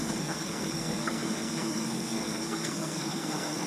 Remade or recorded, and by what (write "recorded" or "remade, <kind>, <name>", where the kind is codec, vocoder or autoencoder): remade, codec, SNAC